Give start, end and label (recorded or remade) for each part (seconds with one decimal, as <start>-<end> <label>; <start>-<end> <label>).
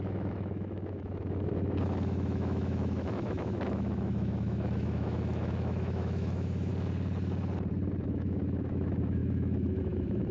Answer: 0.0-6.7 remade; 6.7-8.0 recorded; 8.0-10.3 remade